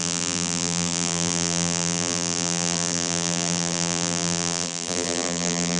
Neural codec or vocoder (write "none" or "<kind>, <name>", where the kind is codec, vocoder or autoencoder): vocoder, BigVGAN v2